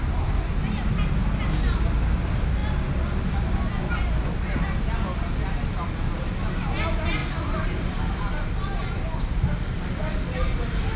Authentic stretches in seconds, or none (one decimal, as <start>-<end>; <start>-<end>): 0.0-11.0